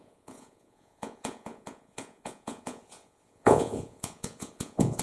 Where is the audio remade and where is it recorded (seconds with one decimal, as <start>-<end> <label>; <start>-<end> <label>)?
0.0-5.0 remade